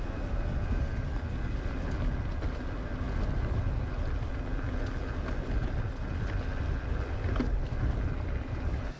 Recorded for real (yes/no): yes